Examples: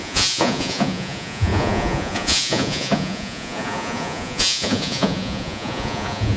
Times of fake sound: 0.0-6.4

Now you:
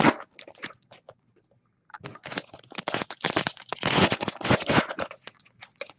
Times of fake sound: 0.6-1.3; 2.1-6.0

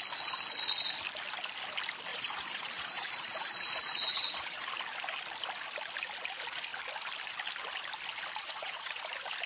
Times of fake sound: 2.1-4.6; 8.4-9.0

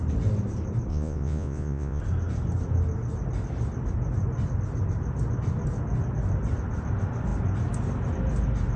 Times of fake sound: 0.9-2.0

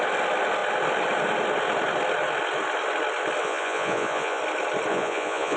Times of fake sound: 3.4-4.4; 4.9-5.6

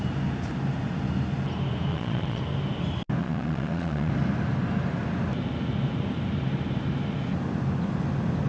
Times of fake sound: 1.9-2.4; 3.2-4.1